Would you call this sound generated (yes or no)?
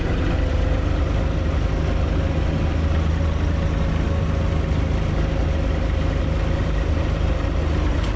no